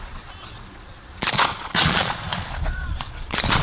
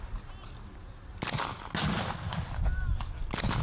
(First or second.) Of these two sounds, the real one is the second